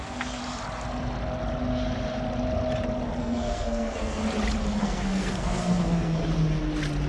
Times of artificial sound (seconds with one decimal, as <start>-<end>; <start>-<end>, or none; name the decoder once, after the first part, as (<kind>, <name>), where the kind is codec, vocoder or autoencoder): 0.0-0.4 (codec, SNAC); 3.2-4.2; 4.8-6.2